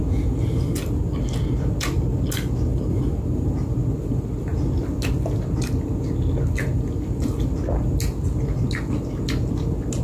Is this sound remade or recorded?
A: recorded